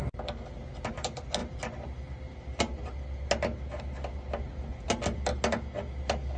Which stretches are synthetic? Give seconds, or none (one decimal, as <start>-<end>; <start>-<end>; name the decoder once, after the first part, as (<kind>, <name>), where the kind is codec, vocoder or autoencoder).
none